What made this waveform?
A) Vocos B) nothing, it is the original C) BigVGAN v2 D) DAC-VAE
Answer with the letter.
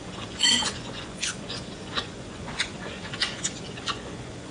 A